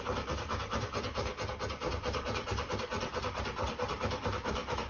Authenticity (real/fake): real